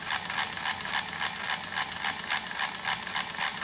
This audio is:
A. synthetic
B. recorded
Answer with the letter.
B